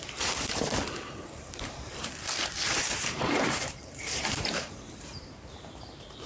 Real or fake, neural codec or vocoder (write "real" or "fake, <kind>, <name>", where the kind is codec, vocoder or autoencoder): fake, vocoder, BigVGAN v2